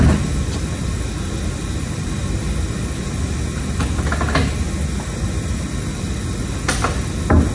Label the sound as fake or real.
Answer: real